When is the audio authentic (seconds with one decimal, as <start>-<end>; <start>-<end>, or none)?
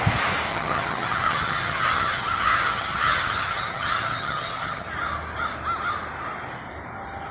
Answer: 0.0-0.5; 4.9-7.3